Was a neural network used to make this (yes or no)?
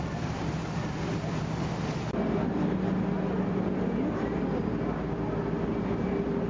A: no